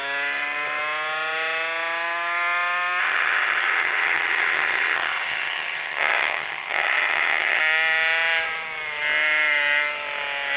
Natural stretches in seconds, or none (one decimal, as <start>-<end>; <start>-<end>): 0.0-3.0; 7.6-10.6